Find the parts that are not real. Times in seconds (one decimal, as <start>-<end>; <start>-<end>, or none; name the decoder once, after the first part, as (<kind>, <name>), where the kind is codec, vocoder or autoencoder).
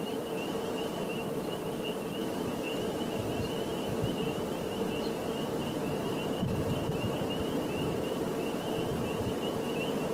none